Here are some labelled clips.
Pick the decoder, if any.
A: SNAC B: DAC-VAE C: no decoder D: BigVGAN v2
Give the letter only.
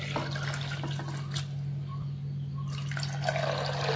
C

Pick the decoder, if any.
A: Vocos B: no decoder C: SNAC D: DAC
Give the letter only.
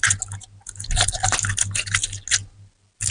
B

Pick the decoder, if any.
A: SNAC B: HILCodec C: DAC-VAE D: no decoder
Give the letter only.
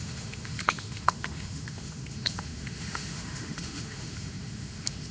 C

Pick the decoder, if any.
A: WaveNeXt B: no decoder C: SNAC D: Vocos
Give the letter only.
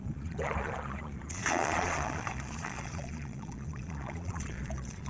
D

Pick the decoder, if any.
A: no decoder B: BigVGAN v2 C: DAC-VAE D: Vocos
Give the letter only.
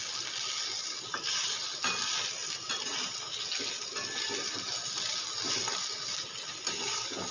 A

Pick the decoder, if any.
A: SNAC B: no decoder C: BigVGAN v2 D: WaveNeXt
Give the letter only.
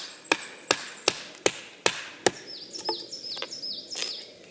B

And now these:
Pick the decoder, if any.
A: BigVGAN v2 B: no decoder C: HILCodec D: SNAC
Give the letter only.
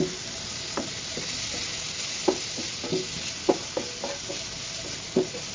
B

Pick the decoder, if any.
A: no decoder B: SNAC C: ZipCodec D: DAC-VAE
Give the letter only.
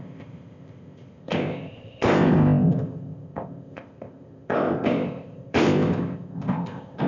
C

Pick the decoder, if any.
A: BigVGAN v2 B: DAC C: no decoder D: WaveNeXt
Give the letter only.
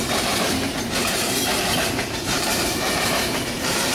A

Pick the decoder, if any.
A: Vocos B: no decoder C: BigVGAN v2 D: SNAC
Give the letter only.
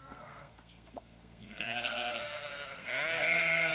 D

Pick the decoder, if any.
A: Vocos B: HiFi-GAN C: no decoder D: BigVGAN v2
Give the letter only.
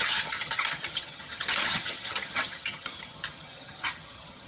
B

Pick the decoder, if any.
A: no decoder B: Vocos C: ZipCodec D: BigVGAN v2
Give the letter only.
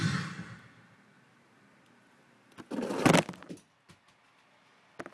A